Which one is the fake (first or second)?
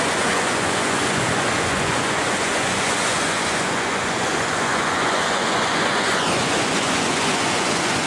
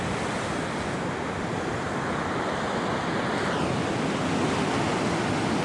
first